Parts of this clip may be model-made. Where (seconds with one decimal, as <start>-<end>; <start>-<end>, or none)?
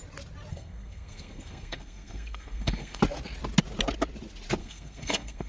0.5-3.0; 4.6-5.5